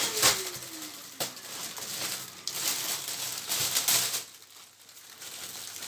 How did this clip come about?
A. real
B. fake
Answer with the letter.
A